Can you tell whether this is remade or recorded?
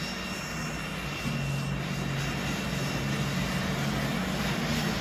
recorded